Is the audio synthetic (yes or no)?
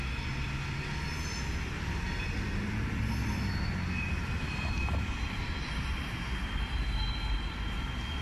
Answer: no